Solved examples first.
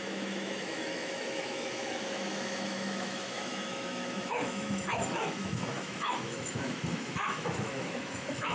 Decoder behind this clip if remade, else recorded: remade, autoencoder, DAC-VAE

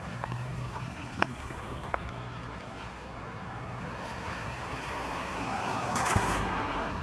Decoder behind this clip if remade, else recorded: remade, codec, SNAC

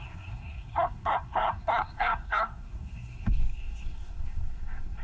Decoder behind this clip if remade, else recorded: remade, codec, SNAC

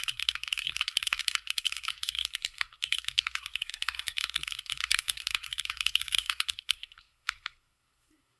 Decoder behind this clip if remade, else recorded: remade, codec, SNAC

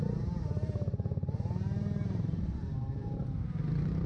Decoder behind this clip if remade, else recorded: remade, vocoder, BigVGAN v2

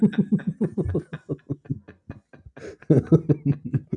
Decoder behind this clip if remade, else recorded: recorded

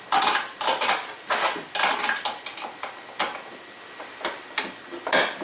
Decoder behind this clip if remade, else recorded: recorded